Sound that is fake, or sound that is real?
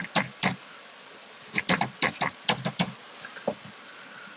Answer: real